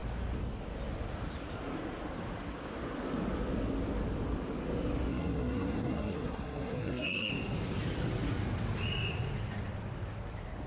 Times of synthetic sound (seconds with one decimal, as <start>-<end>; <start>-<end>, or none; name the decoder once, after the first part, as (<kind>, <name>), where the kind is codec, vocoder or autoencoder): 5.1-7.3 (codec, SNAC)